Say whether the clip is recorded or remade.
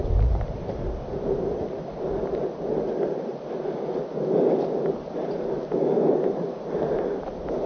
recorded